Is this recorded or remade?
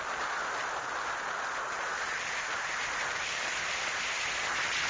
recorded